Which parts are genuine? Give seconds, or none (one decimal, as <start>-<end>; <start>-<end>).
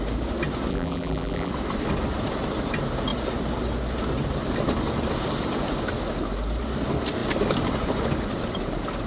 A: 0.0-0.7; 1.5-9.1